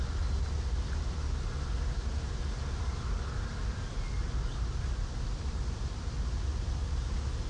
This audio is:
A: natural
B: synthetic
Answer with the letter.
A